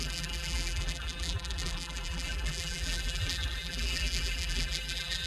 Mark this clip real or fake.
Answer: fake